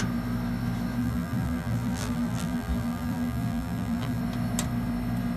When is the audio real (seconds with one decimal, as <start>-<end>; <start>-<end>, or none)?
0.0-1.0; 4.2-5.4